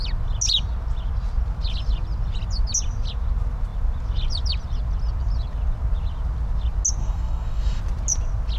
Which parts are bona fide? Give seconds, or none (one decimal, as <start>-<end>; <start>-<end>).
0.0-7.0; 7.8-8.6

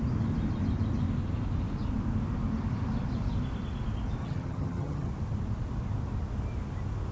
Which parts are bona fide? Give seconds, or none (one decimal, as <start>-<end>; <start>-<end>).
0.0-4.2; 5.1-7.1

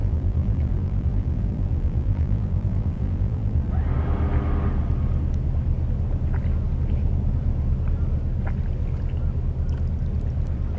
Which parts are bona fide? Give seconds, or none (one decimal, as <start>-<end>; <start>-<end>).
3.7-10.8

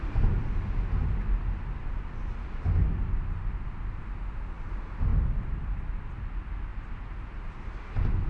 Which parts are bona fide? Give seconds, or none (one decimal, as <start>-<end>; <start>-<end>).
0.0-5.1; 5.9-8.3

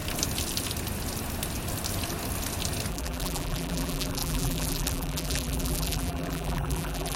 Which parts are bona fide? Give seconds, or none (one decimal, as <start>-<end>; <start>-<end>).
0.0-2.9

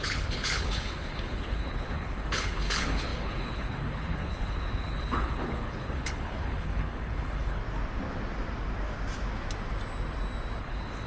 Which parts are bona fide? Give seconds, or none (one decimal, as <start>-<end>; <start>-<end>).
7.6-10.6

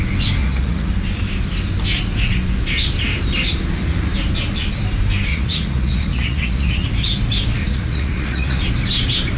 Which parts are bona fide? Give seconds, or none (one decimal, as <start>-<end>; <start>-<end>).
0.0-0.4; 0.9-5.3; 6.9-7.6; 8.6-9.4

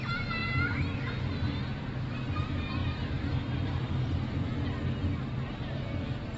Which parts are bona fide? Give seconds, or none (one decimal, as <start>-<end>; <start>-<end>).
0.0-2.8; 3.9-6.4